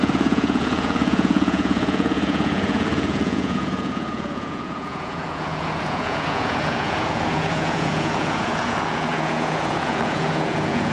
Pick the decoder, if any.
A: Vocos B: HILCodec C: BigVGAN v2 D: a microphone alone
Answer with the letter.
A